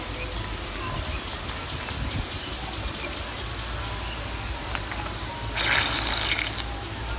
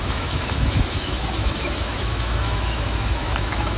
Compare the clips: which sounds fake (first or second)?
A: second